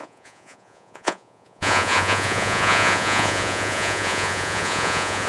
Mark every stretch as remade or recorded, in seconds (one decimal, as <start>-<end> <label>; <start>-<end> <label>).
0.0-5.3 remade

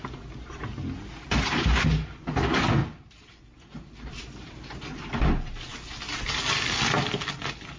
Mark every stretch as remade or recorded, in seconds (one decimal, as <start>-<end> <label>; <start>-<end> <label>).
0.0-7.8 recorded